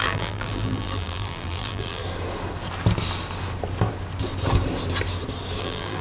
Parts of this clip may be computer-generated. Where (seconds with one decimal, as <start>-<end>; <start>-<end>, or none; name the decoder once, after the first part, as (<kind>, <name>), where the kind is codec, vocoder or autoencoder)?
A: 0.0-2.0 (vocoder, BigVGAN v2); 5.6-6.0

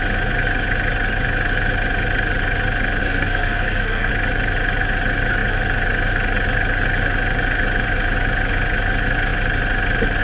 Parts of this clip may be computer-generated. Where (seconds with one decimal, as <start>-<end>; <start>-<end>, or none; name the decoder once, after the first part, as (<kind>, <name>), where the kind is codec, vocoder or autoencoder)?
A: 3.0-4.1 (codec, SNAC)

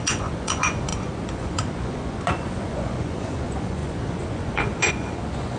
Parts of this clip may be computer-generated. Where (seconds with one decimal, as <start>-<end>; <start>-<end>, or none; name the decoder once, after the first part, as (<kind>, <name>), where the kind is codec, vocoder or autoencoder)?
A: 0.0-5.6 (vocoder, Vocos)

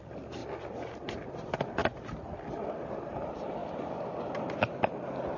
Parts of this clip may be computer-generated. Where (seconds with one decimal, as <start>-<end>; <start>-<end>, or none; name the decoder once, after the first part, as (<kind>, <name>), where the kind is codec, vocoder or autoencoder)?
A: none

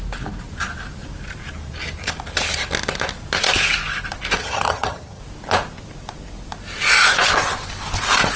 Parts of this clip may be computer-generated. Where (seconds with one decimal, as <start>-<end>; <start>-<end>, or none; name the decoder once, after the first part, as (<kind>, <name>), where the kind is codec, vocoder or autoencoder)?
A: 4.4-5.2 (vocoder, HiFi-GAN)

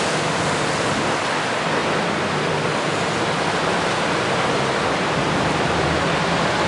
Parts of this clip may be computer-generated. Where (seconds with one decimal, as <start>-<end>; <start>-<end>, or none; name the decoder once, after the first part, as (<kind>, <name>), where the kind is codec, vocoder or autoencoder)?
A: none